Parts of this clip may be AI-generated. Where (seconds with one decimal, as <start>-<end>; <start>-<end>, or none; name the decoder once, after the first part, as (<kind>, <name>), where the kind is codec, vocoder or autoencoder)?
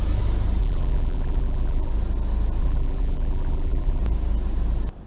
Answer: 0.6-1.9 (vocoder, BigVGAN v2); 2.6-4.0